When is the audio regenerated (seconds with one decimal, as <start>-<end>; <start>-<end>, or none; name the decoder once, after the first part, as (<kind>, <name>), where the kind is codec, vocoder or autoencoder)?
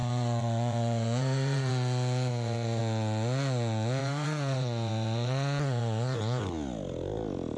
0.0-1.7 (vocoder, Vocos); 2.3-2.8; 4.0-6.4